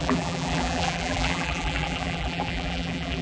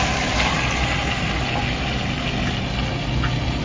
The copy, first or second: first